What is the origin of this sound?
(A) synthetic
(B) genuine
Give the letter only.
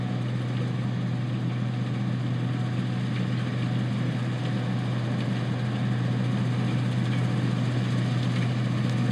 B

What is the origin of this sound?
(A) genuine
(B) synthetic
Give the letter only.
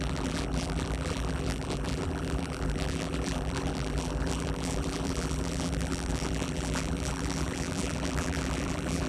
B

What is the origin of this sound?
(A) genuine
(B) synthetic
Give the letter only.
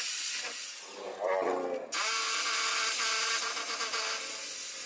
A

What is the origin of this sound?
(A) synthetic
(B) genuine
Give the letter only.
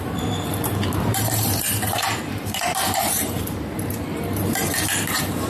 A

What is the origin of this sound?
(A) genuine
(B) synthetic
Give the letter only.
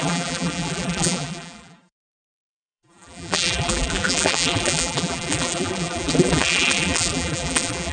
B